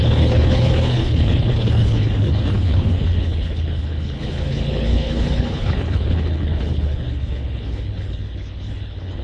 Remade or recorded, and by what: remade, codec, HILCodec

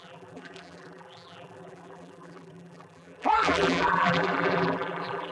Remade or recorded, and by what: remade, vocoder, BigVGAN v2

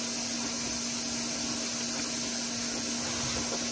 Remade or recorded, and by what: recorded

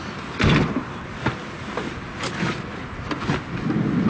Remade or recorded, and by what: recorded